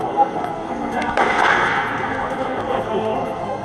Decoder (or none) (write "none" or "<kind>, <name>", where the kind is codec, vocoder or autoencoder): codec, SNAC